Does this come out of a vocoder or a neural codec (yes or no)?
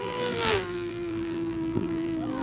yes